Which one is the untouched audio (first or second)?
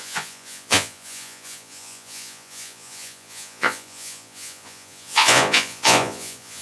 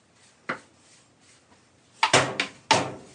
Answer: second